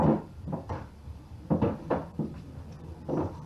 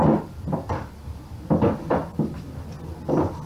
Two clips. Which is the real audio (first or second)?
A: second